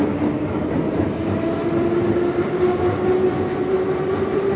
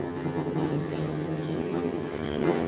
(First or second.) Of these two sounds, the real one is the first